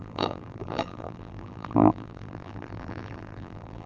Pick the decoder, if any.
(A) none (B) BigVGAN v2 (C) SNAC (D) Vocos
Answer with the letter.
B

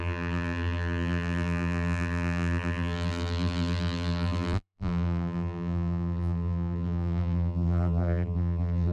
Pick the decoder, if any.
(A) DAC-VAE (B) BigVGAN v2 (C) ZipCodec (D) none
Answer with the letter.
B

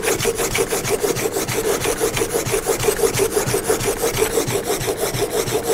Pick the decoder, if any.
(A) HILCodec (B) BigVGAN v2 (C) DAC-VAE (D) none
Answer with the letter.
D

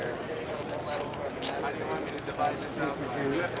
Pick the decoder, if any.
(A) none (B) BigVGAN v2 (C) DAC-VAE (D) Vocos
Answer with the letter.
A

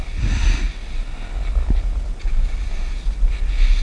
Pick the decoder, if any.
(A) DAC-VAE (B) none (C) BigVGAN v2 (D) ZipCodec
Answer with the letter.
B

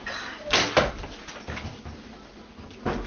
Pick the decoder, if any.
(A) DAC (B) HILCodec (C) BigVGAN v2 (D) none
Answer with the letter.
D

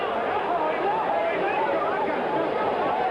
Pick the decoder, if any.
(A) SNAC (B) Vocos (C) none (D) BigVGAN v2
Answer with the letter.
C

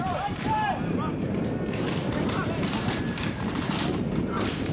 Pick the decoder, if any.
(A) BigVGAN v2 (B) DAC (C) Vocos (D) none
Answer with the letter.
A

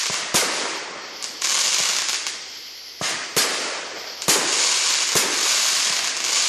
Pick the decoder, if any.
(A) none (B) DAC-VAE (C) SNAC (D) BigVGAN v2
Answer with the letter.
A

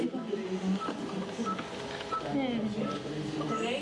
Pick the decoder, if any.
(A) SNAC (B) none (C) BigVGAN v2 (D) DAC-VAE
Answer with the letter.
B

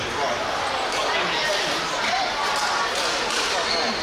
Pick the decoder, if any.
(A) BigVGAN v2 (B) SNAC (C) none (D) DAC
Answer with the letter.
C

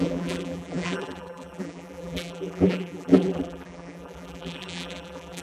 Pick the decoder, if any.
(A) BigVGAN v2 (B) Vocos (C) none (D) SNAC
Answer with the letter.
A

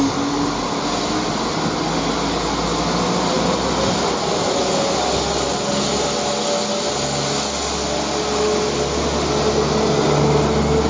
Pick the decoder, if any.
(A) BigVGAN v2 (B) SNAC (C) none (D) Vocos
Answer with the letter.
C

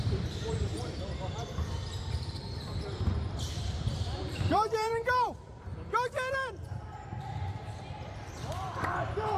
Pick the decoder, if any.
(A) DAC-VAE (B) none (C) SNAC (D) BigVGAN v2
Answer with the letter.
D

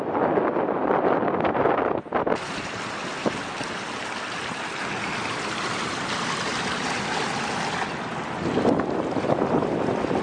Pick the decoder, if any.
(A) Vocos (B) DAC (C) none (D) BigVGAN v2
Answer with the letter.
C